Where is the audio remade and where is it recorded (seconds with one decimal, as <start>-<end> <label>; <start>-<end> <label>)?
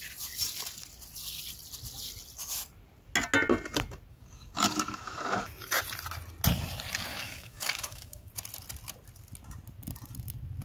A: 0.0-4.1 recorded; 4.1-5.8 remade; 5.8-7.1 recorded; 7.1-8.3 remade; 8.3-10.6 recorded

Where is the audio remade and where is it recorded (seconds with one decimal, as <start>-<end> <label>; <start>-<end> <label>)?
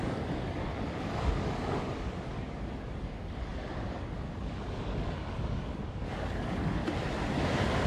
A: 0.0-6.8 remade; 6.8-7.9 recorded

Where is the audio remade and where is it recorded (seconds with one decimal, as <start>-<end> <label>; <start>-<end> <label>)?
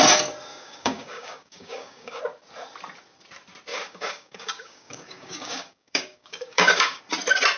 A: 0.0-0.5 recorded; 0.5-2.2 remade; 2.2-3.7 recorded; 3.7-7.0 remade; 7.0-7.6 recorded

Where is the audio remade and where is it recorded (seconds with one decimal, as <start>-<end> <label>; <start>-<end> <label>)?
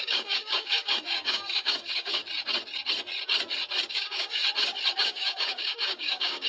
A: 0.0-2.2 remade; 2.2-3.9 recorded; 3.9-4.4 remade; 4.4-5.0 recorded; 5.0-6.5 remade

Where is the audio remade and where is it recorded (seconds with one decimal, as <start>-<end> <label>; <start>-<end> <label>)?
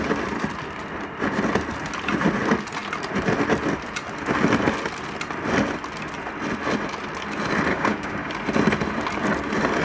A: 0.0-7.7 recorded; 7.7-8.3 remade; 8.3-9.8 recorded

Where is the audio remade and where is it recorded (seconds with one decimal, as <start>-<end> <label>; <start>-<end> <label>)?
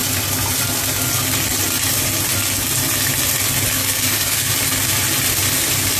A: 0.0-3.8 recorded; 3.8-4.5 remade; 4.5-6.0 recorded